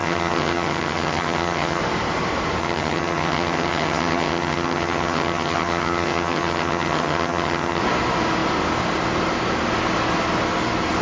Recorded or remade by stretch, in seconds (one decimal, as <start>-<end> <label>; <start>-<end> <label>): 0.0-1.8 remade; 1.8-2.6 recorded; 2.6-7.8 remade; 7.8-11.0 recorded